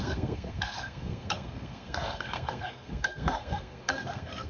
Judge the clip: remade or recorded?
remade